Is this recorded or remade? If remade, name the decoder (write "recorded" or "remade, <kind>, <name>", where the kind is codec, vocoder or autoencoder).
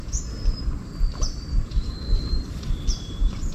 remade, vocoder, BigVGAN v2